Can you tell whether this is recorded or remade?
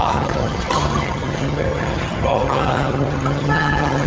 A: remade